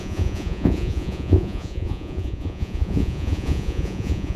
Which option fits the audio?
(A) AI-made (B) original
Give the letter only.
A